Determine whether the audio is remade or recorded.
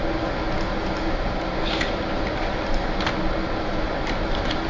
recorded